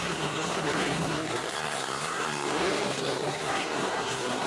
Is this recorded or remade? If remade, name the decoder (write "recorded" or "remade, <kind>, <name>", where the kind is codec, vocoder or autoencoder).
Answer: remade, codec, SNAC